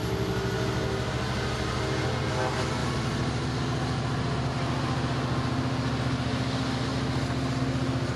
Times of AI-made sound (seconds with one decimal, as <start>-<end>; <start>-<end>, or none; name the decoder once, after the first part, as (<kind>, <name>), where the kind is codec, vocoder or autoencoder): 2.8-4.5 (vocoder, BigVGAN v2); 6.9-7.6